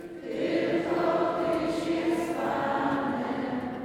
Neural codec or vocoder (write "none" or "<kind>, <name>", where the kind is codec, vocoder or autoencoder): none